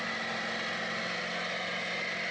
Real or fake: real